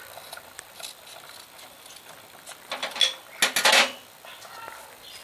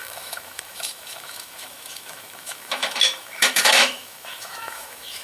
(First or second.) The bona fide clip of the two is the first